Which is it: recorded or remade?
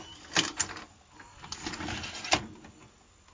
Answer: recorded